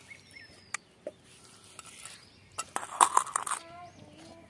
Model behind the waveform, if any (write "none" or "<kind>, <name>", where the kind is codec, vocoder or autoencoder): none